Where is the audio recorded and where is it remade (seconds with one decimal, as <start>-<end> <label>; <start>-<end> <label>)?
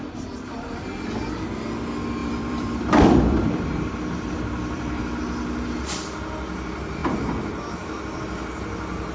0.0-2.2 recorded; 2.2-5.2 remade; 5.2-7.0 recorded; 7.0-8.2 remade; 8.2-9.1 recorded